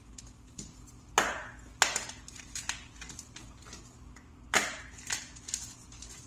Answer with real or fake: real